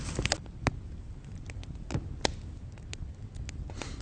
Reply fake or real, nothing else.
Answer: real